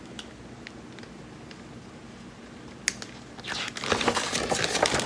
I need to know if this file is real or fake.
real